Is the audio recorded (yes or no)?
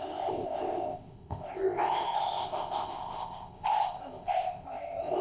no